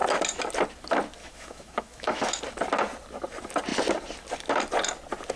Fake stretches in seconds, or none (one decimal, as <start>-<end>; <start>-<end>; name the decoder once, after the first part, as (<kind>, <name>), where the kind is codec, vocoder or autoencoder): 1.2-2.4 (autoencoder, DAC-VAE)